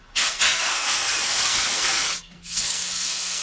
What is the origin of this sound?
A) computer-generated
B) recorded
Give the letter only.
A